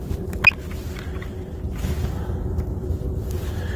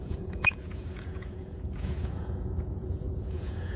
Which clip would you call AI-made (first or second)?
second